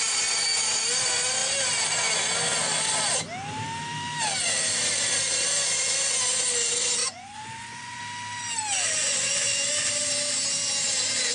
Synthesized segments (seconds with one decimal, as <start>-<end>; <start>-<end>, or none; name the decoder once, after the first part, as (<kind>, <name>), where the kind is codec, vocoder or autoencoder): 7.0-8.0 (vocoder, Vocos); 9.0-9.7